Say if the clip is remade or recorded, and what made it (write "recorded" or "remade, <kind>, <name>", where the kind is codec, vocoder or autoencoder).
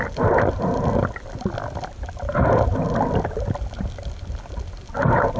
recorded